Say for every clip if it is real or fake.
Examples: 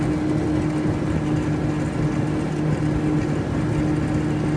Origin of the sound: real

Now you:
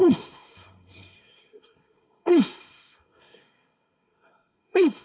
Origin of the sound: fake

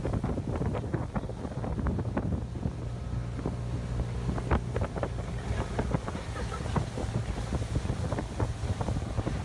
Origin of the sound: real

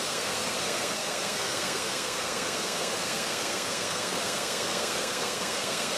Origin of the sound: fake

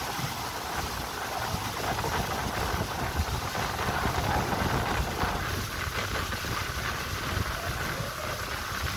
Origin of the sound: real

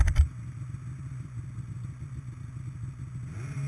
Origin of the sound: real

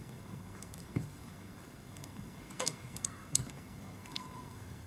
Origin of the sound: fake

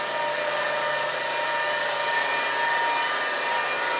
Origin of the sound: real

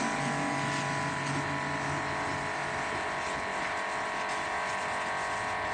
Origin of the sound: real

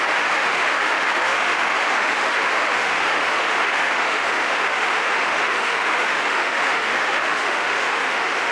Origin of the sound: fake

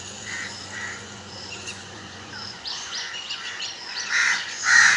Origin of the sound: fake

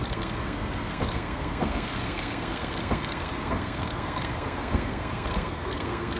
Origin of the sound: fake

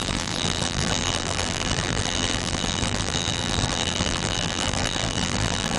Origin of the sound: fake